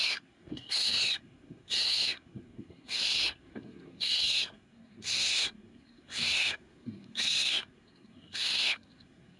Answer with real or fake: fake